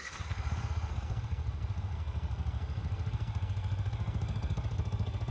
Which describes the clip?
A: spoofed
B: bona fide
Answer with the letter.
A